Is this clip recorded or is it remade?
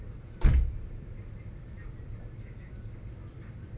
remade